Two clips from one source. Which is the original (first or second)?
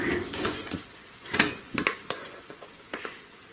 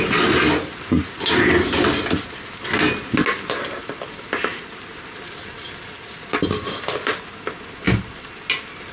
second